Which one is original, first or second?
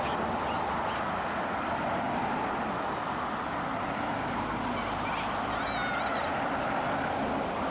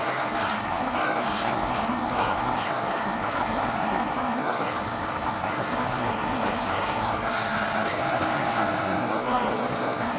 first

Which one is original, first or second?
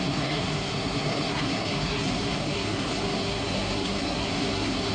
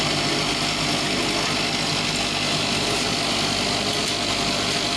second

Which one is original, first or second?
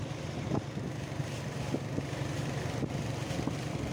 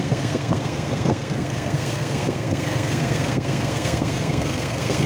first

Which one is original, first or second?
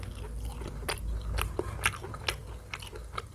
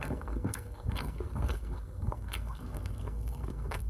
first